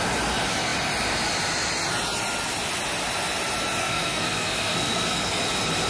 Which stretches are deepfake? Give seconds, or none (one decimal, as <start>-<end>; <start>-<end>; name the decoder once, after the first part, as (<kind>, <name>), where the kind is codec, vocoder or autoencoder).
3.8-5.4 (codec, SNAC)